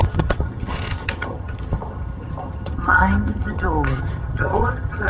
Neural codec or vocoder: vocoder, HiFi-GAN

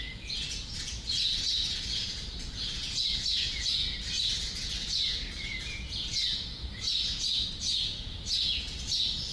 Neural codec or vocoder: vocoder, Vocos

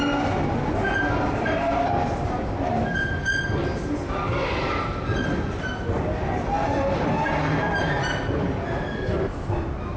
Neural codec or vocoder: none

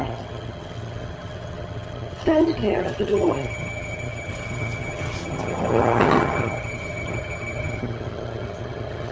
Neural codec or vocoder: vocoder, HiFi-GAN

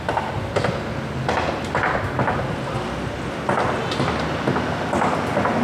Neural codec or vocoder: none